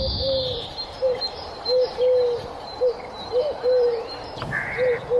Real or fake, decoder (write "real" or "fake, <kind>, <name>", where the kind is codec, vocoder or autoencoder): fake, vocoder, BigVGAN v2